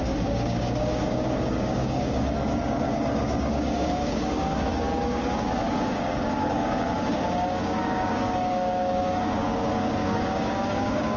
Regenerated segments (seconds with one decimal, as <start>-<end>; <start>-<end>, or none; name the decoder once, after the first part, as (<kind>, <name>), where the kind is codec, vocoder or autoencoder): 0.0-11.2 (codec, DAC)

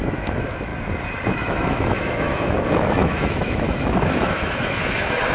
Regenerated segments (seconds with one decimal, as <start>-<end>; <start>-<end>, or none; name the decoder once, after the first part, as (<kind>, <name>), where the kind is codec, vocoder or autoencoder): 0.0-0.7 (autoencoder, DAC-VAE); 1.3-5.3

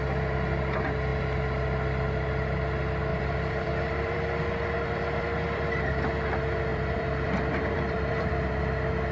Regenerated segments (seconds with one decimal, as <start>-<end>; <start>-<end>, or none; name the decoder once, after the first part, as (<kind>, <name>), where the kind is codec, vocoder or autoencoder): 1.1-1.8 (vocoder, BigVGAN v2); 3.1-5.6; 6.7-8.6

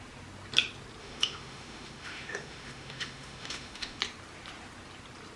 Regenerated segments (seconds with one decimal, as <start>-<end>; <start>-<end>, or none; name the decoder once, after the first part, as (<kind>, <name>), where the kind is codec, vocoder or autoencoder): 1.0-4.0 (autoencoder, DAC-VAE)

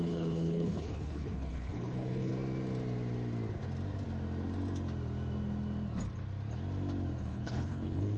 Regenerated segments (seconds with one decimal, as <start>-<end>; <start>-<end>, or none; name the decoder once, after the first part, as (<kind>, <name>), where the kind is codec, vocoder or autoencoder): 0.0-2.3 (codec, HILCodec); 7.2-8.2